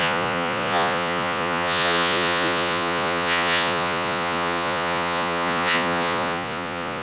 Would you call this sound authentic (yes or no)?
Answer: no